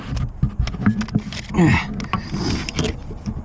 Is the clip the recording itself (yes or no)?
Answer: yes